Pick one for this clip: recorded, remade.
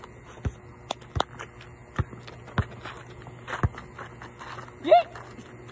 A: recorded